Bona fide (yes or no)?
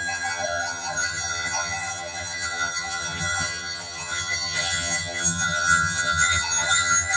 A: no